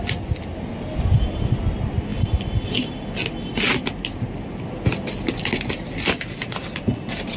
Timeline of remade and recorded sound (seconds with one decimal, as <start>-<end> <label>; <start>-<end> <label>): 0.0-7.4 recorded